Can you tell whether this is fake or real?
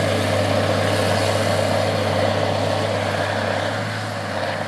real